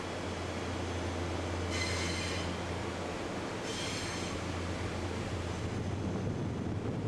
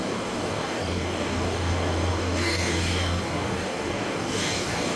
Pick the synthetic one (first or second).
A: second